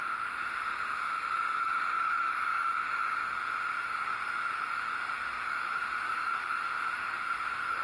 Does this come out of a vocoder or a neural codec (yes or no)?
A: yes